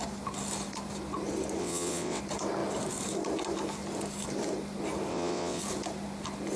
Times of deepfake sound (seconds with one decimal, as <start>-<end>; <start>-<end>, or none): 1.6-2.2; 5.1-5.6